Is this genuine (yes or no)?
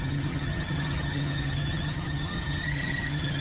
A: no